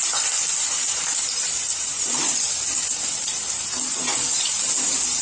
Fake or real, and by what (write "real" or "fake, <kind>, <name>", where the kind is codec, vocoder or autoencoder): real